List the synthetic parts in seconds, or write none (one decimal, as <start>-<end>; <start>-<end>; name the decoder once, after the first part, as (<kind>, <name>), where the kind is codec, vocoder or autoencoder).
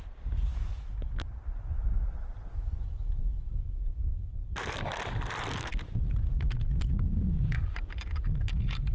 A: 0.5-1.3 (autoencoder, DAC-VAE); 2.5-4.3